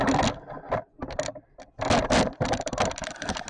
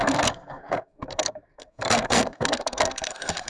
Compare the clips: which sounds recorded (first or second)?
first